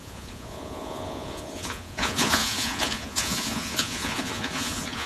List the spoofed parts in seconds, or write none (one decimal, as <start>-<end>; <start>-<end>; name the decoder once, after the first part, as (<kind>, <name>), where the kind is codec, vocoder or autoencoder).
0.0-5.1 (vocoder, Vocos)